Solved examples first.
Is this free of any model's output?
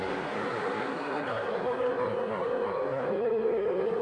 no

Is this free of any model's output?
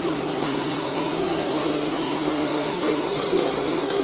no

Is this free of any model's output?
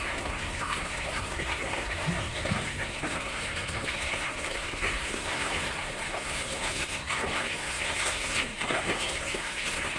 no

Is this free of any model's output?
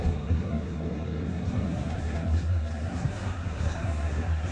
no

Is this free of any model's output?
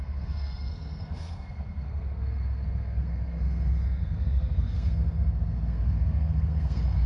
no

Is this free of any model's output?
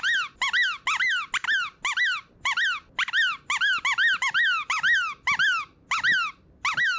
yes